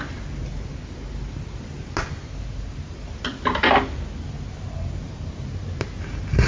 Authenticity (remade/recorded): recorded